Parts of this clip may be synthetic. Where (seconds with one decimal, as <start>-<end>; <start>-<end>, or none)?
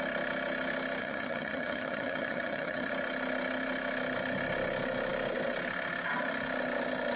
1.0-2.9